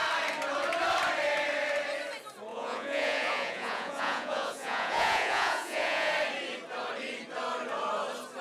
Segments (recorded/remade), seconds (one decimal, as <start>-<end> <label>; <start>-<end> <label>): 0.0-2.5 recorded; 2.5-6.1 remade; 6.1-8.4 recorded